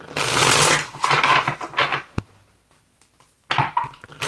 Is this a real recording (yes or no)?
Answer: yes